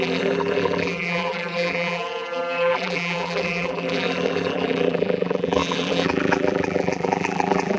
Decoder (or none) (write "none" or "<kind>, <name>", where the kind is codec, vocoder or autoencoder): vocoder, BigVGAN v2